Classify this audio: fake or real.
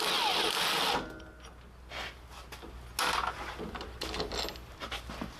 real